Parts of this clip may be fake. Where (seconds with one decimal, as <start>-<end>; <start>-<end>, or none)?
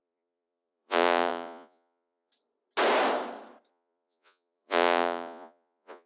0.0-2.3; 3.7-6.1